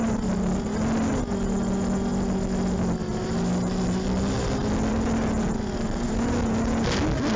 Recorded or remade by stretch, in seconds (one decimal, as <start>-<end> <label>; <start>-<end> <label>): 0.0-7.4 recorded